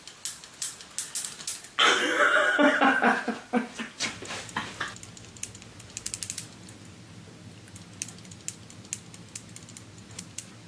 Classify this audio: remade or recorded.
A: recorded